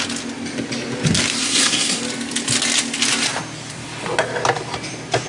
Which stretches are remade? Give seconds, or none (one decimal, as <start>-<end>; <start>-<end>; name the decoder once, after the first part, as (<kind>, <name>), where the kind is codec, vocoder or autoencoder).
1.4-2.0 (codec, SNAC)